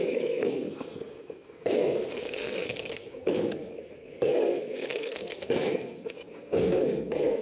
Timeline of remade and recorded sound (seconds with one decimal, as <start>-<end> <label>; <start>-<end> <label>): 0.0-7.4 remade